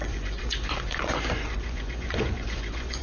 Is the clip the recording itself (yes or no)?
no